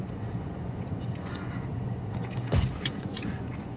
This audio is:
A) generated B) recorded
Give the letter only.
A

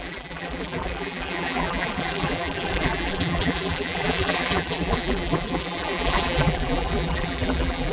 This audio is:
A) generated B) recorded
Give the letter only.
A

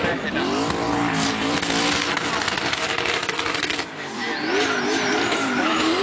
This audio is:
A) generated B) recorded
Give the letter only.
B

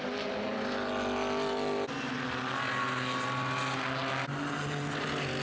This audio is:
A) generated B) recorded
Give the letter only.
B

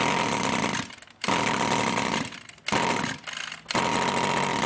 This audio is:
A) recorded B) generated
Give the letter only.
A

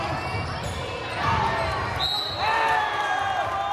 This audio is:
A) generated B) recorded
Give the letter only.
B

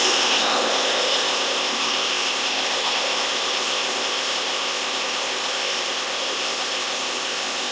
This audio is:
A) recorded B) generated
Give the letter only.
B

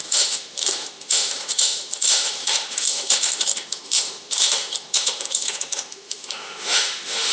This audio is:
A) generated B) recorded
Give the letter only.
A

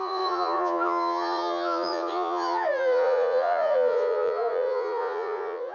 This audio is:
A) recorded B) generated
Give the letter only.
B